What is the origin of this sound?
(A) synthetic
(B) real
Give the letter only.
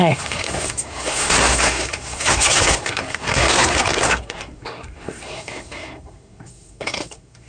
A